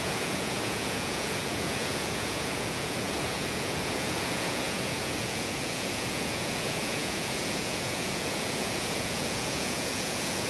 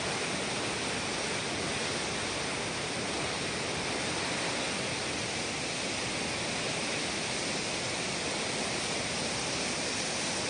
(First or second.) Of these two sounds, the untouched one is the second